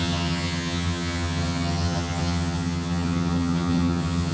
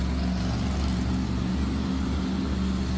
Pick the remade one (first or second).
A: first